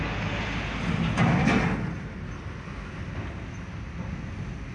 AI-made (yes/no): no